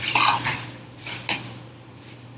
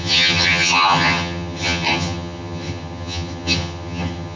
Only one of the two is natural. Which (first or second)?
first